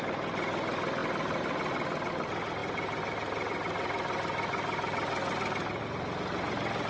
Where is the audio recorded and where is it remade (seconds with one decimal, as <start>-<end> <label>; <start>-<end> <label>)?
0.0-6.9 recorded